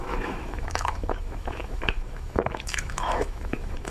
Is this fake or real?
fake